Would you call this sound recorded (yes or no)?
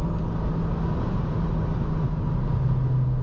yes